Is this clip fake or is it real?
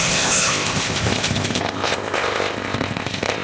fake